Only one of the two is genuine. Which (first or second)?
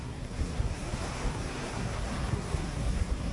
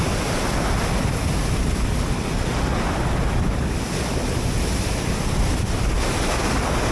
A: second